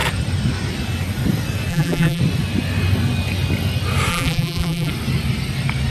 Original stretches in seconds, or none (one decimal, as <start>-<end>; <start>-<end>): 0.0-1.7; 2.2-4.1; 4.9-5.9